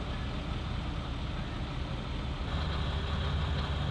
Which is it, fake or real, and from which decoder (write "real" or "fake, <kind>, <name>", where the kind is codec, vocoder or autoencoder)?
real